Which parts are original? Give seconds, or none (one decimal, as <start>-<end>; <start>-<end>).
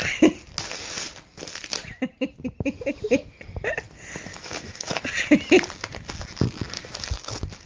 0.0-4.3; 5.0-7.7